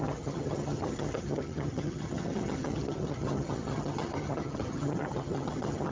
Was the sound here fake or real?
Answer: fake